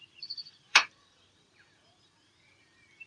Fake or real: fake